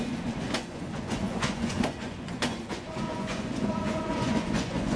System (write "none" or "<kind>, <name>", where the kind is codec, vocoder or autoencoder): vocoder, Vocos